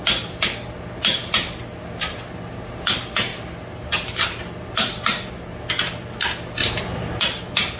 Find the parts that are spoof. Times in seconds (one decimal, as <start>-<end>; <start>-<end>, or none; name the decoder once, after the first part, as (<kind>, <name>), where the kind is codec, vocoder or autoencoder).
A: 3.3-4.4 (vocoder, BigVGAN v2); 6.6-7.2